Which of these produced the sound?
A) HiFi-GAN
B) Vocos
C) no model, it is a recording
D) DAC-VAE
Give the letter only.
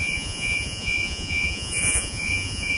B